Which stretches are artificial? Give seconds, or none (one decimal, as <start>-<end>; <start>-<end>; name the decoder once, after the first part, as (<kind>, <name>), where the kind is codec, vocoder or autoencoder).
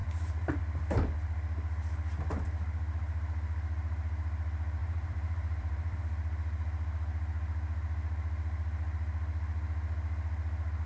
0.0-0.6 (vocoder, BigVGAN v2); 4.8-6.0